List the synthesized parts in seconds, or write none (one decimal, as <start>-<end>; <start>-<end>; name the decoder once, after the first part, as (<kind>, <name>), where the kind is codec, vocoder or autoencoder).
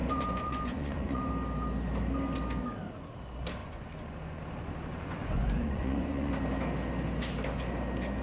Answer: 0.0-1.3 (vocoder, Vocos); 3.6-4.4; 4.9-6.3